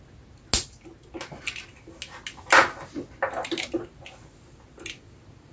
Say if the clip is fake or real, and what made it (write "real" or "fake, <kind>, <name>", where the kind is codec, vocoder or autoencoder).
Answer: real